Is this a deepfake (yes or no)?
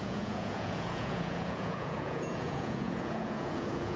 yes